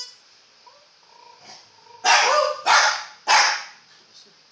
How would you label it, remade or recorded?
recorded